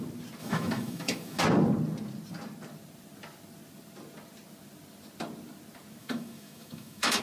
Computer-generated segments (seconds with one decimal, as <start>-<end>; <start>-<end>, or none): 0.4-1.4; 6.0-7.2